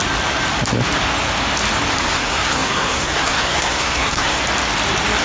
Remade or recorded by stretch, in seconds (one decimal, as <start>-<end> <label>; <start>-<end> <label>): 0.0-2.0 recorded; 2.0-4.4 remade; 4.4-5.2 recorded